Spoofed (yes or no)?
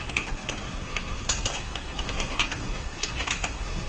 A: yes